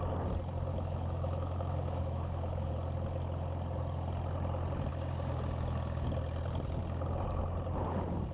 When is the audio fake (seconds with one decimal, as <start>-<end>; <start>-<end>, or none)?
0.7-2.7